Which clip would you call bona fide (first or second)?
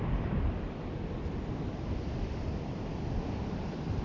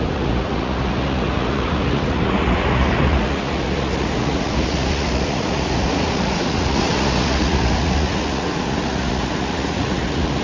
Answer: first